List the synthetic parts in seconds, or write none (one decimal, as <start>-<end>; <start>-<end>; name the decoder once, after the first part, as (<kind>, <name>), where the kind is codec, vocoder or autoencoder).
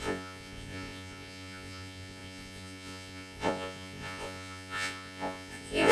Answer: 0.0-5.9 (vocoder, Vocos)